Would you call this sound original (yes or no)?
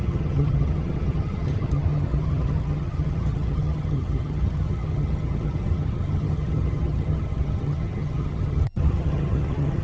no